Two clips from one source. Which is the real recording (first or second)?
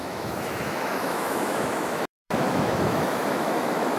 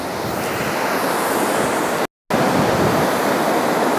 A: second